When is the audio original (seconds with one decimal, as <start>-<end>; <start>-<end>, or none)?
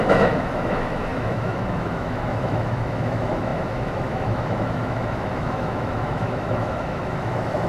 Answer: none